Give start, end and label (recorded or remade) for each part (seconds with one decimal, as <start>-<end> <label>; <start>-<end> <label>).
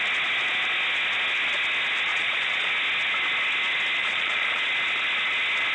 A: 0.0-2.1 recorded; 2.1-2.7 remade; 2.7-4.0 recorded; 4.0-4.6 remade; 4.6-5.7 recorded